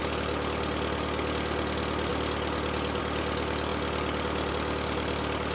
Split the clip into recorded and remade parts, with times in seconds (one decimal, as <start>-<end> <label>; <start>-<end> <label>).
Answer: 0.0-5.5 recorded